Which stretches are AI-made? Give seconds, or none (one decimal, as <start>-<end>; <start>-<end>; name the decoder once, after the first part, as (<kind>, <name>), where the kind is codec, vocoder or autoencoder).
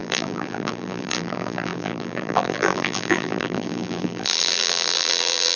0.0-5.6 (vocoder, BigVGAN v2)